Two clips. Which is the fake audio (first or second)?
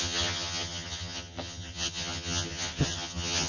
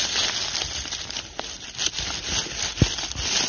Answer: first